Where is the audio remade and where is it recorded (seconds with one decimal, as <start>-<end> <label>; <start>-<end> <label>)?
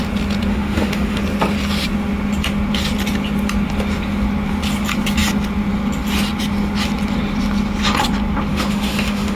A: 0.0-0.5 recorded; 0.5-1.2 remade; 1.2-8.5 recorded; 8.5-9.4 remade